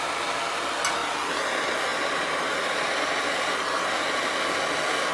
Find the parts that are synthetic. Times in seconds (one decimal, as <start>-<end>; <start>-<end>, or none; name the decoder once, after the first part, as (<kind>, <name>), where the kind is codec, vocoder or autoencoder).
1.9-4.1 (vocoder, BigVGAN v2)